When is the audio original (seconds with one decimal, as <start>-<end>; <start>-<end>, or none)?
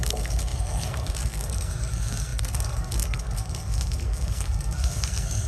none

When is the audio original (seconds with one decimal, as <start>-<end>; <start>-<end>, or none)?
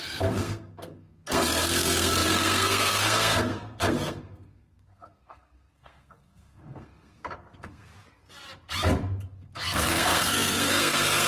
7.9-9.4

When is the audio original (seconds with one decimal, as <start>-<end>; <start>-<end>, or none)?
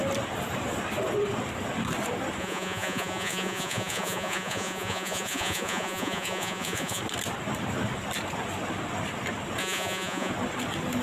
0.0-2.4; 7.0-9.6; 10.3-11.0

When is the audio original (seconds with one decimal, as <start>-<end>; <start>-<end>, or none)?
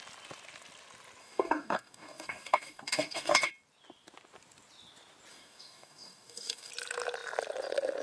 0.0-1.2; 3.5-5.3; 6.7-8.0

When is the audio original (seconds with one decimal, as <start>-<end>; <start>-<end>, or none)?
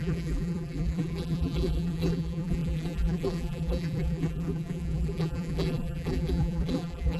none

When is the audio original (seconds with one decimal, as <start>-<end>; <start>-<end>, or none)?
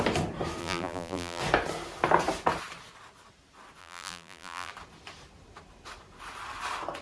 0.0-0.6; 1.4-3.8; 4.7-7.0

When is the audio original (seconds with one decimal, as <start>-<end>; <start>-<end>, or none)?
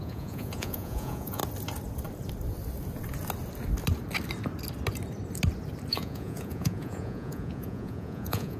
1.4-5.9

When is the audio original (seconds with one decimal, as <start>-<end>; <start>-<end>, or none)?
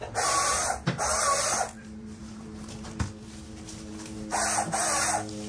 0.0-5.5